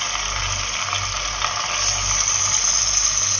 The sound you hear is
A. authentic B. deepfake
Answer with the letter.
A